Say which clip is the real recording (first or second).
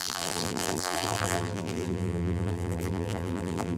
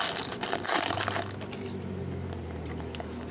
second